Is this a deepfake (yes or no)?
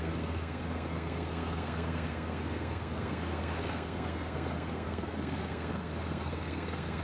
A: yes